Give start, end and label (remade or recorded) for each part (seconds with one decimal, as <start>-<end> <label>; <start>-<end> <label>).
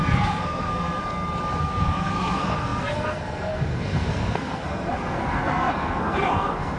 0.0-1.0 remade; 1.0-1.6 recorded; 1.6-6.8 remade